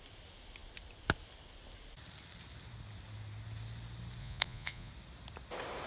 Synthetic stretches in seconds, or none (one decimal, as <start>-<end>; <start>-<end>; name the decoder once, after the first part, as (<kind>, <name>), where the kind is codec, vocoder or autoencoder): 4.2-4.9 (vocoder, Vocos)